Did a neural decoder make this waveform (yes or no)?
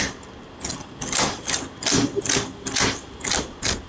no